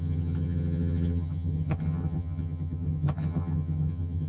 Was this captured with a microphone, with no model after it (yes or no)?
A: no